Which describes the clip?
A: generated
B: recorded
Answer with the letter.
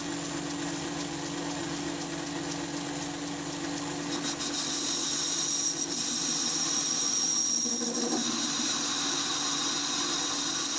B